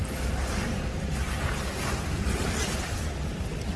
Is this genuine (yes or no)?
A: yes